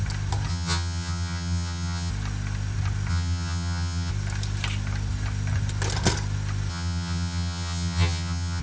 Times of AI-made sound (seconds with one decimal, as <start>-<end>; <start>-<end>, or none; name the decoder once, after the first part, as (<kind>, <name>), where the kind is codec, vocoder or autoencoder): 0.5-2.1 (vocoder, HiFi-GAN); 3.1-4.1; 6.7-8.6